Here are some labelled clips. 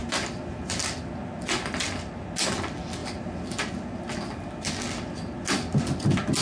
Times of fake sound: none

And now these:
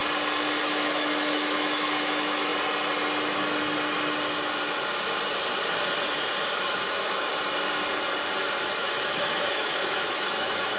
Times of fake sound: 0.6-2.5; 6.5-7.3; 8.8-10.8